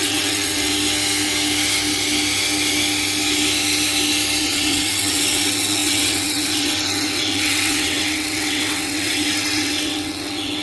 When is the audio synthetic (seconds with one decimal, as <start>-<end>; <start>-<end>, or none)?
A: 0.0-0.7; 4.4-10.6